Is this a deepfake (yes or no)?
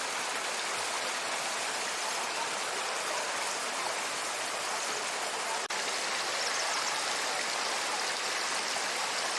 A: no